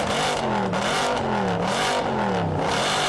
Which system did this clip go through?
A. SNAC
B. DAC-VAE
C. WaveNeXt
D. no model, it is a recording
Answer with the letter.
D